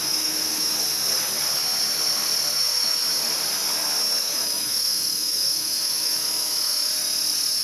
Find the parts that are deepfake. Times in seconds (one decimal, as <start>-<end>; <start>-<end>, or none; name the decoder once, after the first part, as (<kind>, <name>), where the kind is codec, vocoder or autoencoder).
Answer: 0.0-0.7 (autoencoder, DAC-VAE); 2.6-3.0; 4.2-6.9